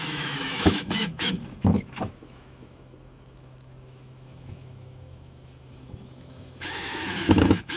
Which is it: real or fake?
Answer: fake